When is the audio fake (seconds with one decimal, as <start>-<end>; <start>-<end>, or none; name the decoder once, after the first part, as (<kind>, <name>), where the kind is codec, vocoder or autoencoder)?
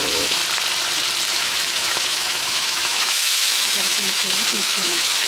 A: 0.0-0.4 (autoencoder, DAC-VAE); 1.3-5.3